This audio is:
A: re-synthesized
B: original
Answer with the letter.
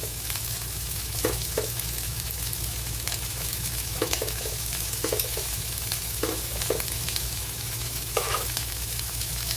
A